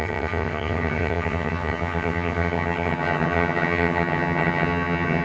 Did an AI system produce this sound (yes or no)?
yes